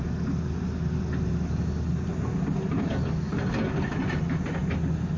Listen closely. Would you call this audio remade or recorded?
recorded